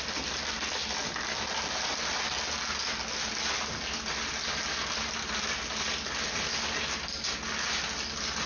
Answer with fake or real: real